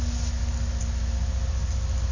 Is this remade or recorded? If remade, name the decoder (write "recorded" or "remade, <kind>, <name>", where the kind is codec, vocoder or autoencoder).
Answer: recorded